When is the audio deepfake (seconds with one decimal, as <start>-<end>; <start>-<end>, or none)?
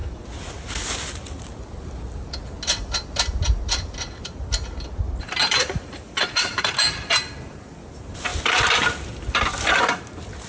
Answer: 5.4-6.2